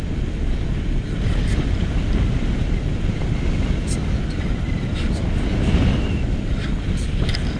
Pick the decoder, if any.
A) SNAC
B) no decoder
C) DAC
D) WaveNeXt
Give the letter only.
B